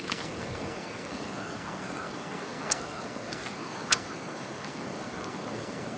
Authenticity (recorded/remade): remade